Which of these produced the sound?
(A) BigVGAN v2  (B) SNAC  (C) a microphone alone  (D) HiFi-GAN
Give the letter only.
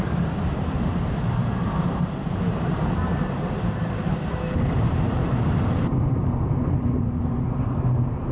A